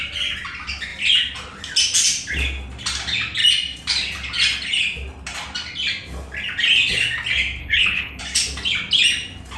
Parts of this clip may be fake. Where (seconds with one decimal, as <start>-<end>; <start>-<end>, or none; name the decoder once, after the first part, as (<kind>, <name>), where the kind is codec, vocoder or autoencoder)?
7.6-8.2 (codec, HILCodec)